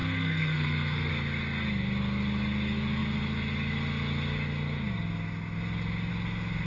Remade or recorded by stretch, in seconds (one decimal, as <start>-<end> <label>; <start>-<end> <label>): 0.0-1.1 remade; 1.1-6.7 recorded